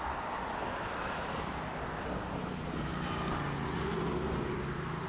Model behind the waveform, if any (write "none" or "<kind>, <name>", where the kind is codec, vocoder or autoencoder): none